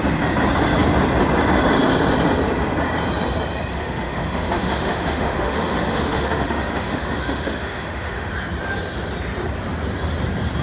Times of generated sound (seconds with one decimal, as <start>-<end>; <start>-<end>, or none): 3.7-8.3